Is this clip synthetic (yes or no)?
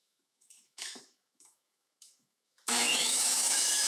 yes